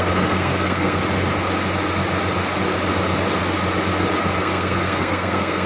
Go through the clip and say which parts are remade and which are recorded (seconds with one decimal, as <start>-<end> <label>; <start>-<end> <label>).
0.0-1.0 remade; 1.0-4.4 recorded; 4.4-5.7 remade